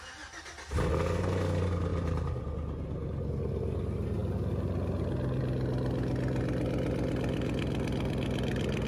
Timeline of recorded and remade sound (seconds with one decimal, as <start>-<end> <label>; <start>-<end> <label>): 0.0-1.9 recorded; 1.9-3.3 remade; 3.3-8.9 recorded